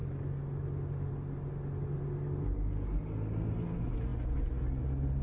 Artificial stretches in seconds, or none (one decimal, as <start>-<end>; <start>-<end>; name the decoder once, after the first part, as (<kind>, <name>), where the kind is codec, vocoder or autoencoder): none